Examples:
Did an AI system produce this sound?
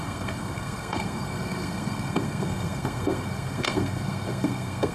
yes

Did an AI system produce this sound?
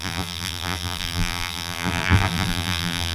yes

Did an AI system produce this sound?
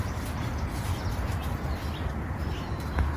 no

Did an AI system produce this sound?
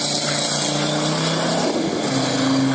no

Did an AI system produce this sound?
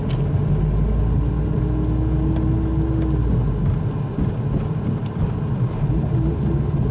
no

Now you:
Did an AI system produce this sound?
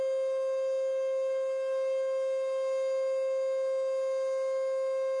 no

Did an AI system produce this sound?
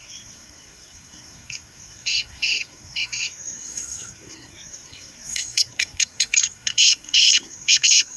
yes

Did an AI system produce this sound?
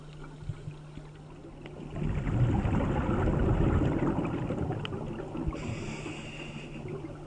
no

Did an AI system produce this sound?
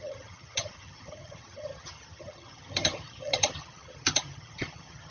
yes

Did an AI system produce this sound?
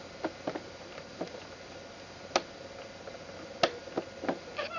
no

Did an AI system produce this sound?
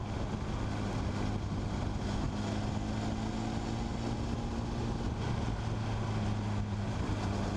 no